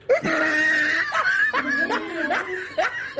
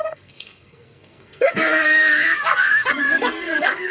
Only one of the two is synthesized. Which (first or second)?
second